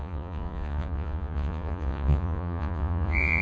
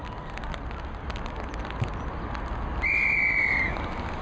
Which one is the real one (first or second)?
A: second